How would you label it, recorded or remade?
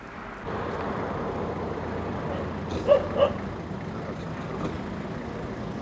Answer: recorded